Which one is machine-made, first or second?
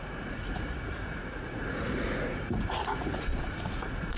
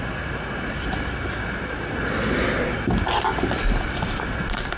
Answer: first